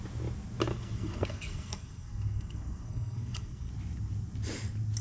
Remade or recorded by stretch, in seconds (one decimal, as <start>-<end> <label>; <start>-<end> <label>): 0.0-0.7 recorded; 0.7-3.7 remade; 3.7-5.0 recorded